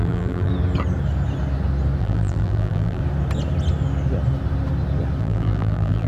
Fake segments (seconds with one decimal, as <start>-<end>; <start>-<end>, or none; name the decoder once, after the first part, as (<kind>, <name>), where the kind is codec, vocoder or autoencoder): 0.0-0.5 (vocoder, BigVGAN v2); 2.0-3.0; 5.2-6.1